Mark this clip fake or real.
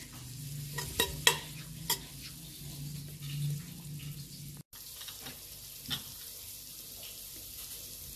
real